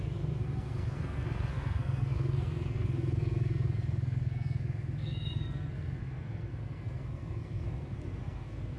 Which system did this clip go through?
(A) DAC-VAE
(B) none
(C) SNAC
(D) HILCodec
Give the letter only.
C